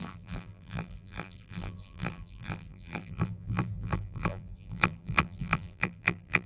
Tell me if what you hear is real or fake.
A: fake